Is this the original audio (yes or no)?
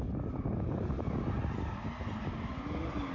yes